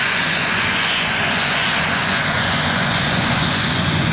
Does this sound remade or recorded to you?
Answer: remade